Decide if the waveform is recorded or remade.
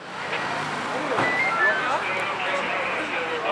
recorded